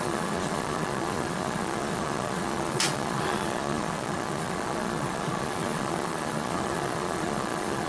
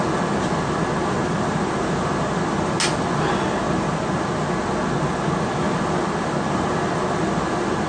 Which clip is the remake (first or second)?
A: first